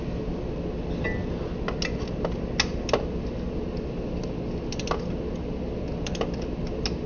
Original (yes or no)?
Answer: yes